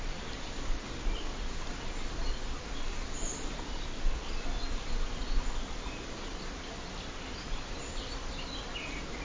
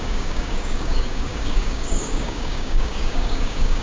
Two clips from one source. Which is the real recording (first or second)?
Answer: first